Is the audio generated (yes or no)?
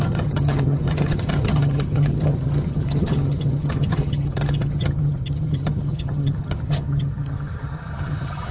yes